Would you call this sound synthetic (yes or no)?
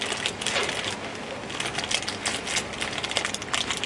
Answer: no